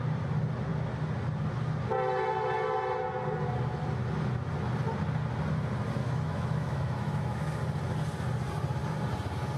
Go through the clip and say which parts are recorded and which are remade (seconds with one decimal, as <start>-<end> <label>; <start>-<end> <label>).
0.0-6.0 recorded; 6.0-7.6 remade; 7.6-9.6 recorded

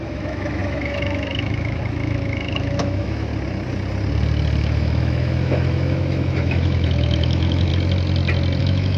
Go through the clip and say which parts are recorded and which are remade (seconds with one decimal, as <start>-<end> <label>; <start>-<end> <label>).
0.0-3.3 remade; 3.3-4.6 recorded; 4.6-7.7 remade; 7.7-8.6 recorded; 8.6-9.0 remade

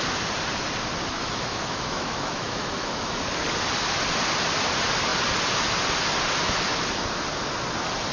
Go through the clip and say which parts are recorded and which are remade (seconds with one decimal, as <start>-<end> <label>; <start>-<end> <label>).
0.0-1.2 recorded; 1.2-3.2 remade; 3.2-8.1 recorded

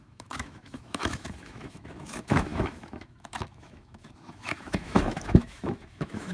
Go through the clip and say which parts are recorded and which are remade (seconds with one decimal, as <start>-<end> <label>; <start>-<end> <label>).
0.0-6.3 remade

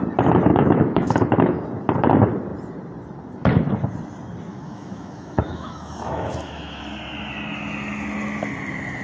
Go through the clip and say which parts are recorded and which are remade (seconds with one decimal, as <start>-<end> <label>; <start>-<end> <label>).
0.0-0.5 recorded; 0.5-1.6 remade; 1.6-4.5 recorded; 4.5-6.8 remade; 6.8-9.0 recorded